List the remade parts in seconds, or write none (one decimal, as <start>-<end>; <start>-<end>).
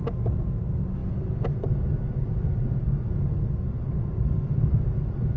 none